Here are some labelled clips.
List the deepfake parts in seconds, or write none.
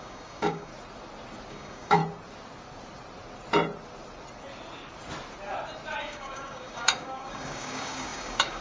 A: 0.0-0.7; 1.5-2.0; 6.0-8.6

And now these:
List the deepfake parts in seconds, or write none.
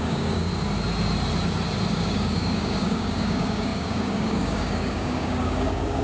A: 0.0-0.5; 1.9-6.0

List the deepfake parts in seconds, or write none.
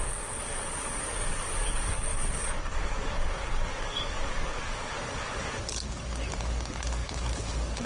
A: 0.0-7.9